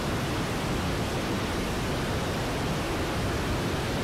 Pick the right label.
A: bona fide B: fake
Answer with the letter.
A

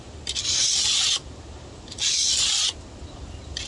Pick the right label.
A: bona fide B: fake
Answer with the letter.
A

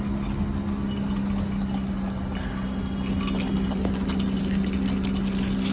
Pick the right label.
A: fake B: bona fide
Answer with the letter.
B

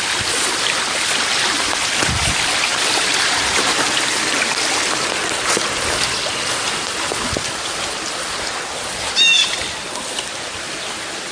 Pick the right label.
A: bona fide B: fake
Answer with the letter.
A